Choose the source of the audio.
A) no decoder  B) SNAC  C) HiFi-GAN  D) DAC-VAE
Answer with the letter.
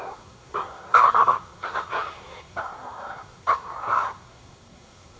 B